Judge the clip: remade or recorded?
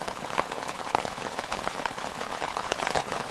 remade